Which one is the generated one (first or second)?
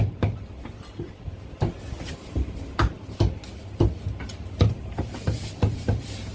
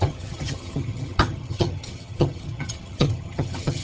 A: second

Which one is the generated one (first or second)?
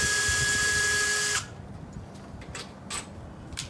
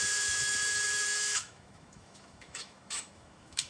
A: second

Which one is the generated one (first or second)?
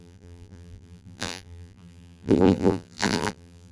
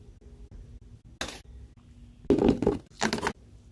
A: first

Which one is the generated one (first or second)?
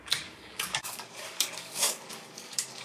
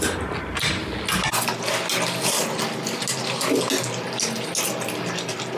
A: first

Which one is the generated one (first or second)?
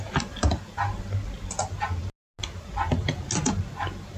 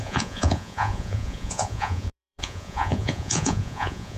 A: second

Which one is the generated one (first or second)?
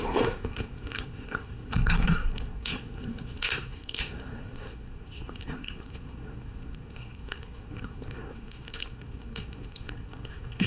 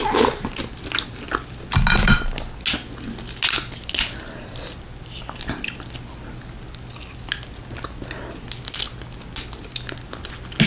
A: first